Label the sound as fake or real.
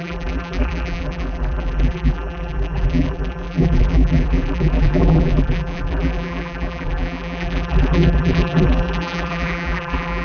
fake